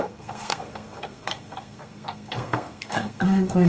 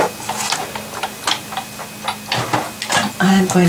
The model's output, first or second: first